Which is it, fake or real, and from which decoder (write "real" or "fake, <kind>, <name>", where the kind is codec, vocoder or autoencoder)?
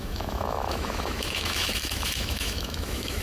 fake, autoencoder, DAC-VAE